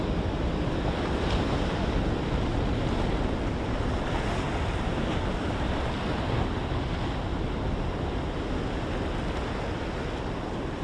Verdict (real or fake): real